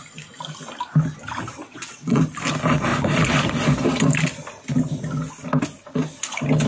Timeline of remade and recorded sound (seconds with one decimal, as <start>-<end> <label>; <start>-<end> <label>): 0.0-1.7 recorded; 1.7-2.2 remade; 2.2-6.7 recorded